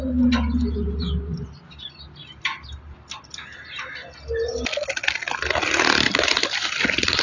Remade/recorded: recorded